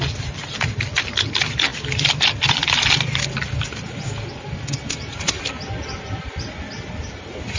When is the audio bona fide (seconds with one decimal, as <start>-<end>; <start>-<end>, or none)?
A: 0.0-7.6